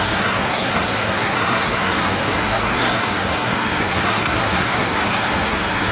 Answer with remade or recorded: remade